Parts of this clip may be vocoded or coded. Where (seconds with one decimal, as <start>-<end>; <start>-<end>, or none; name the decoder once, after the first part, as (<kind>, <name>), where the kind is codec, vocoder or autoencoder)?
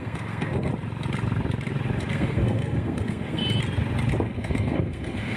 0.0-0.7 (codec, SNAC); 2.1-3.4; 4.2-5.4